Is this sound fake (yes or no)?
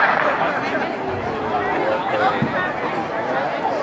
no